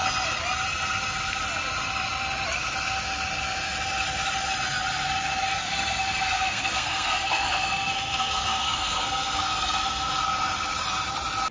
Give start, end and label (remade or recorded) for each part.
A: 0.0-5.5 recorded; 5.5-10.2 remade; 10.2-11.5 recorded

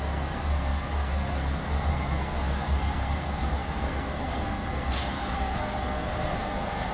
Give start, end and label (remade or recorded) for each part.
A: 0.0-6.9 remade

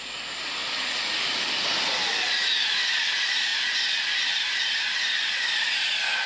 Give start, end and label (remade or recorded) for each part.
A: 0.0-6.3 recorded

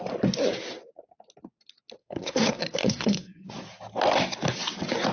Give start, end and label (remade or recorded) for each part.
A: 0.0-2.0 recorded; 2.0-3.5 remade; 3.5-5.1 recorded